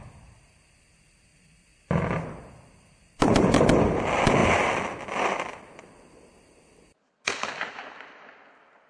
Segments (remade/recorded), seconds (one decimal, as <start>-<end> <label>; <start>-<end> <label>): 0.0-8.9 recorded